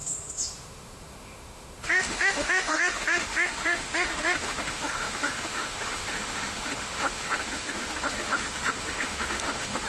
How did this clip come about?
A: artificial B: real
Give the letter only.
A